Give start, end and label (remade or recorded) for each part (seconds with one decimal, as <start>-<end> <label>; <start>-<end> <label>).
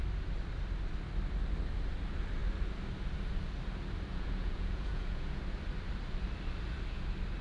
0.0-4.1 recorded; 4.1-5.4 remade; 5.4-7.4 recorded